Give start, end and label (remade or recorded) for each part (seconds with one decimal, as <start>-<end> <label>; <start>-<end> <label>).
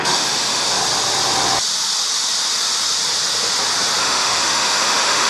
0.0-0.8 remade; 0.8-4.0 recorded; 4.0-5.3 remade